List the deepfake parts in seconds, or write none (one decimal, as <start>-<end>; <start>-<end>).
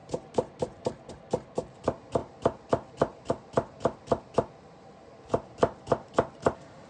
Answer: none